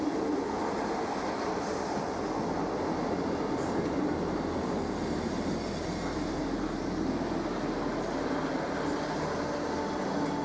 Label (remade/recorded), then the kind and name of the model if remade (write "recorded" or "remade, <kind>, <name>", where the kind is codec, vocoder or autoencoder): recorded